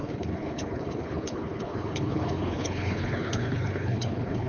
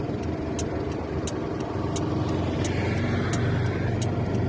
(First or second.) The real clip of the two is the second